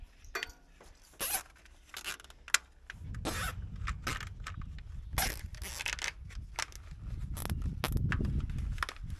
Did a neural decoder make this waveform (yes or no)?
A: no